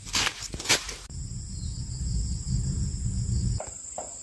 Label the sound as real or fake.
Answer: real